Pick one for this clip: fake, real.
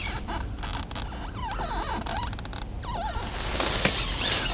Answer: real